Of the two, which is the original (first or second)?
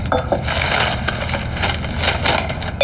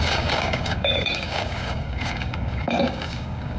first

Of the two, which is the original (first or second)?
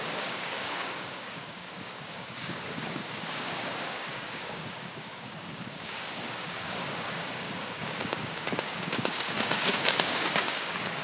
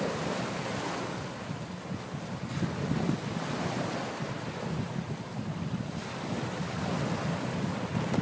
second